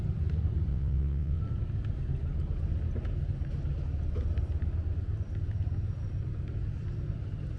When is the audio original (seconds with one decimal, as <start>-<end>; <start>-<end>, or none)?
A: 0.0-0.7; 1.4-7.6